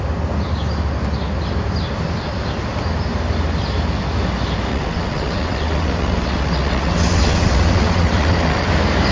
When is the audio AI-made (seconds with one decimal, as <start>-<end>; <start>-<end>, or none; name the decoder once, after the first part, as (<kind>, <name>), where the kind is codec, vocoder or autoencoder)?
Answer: 4.7-8.7 (vocoder, WaveNeXt)